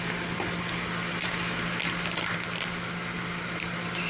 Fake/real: real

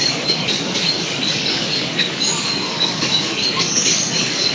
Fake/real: fake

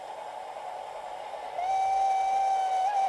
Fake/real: real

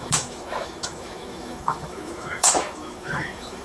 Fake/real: fake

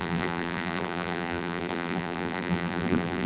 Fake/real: fake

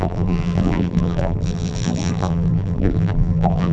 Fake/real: fake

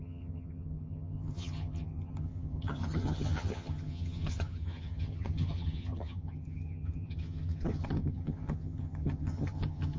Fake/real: fake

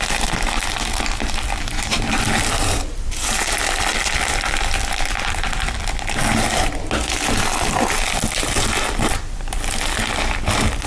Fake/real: real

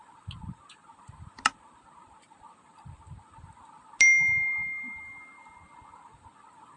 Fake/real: real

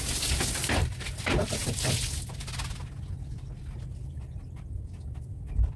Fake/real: real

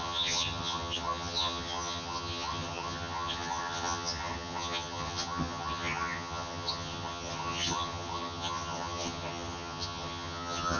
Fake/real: fake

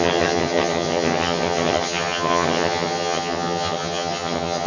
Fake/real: fake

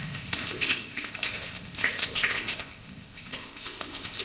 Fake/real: fake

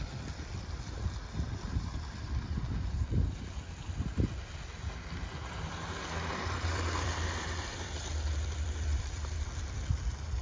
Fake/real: fake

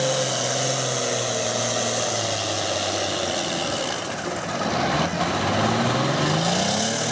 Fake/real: real